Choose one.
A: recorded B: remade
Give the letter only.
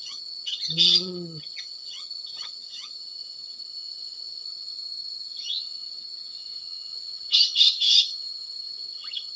B